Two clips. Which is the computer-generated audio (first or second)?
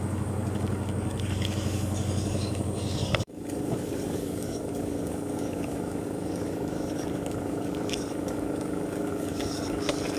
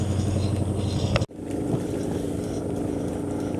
first